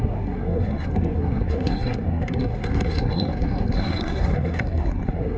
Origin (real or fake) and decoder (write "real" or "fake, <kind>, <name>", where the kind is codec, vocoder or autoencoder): fake, codec, SNAC